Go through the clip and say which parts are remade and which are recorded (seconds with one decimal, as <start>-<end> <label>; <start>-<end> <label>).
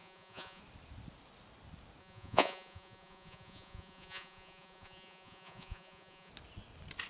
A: 0.0-0.6 remade; 0.6-2.0 recorded; 2.0-6.3 remade; 6.3-7.1 recorded